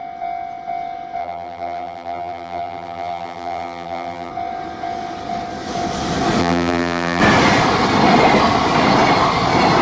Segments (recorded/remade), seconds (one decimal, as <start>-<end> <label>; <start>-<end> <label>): 0.0-1.2 recorded; 1.2-4.3 remade; 4.3-6.4 recorded; 6.4-7.2 remade; 7.2-9.8 recorded